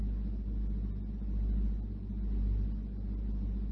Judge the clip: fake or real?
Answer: real